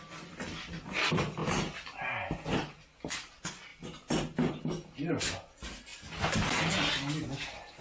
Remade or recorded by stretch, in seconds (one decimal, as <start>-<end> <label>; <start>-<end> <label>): 0.0-7.8 recorded